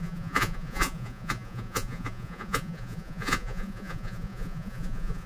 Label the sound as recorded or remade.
remade